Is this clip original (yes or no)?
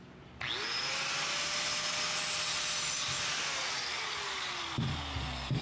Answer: yes